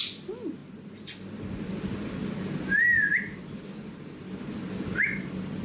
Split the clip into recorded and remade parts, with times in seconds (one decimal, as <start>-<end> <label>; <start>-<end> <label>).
0.0-5.6 recorded